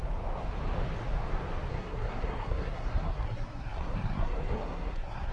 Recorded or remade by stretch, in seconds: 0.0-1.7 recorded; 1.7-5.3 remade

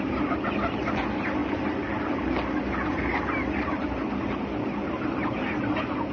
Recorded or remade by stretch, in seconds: 0.0-6.1 recorded

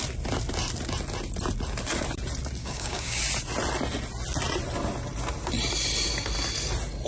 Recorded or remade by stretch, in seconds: 0.0-2.6 recorded; 2.6-3.2 remade; 3.2-7.1 recorded